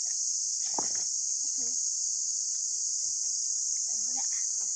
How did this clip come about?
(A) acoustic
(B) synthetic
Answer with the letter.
A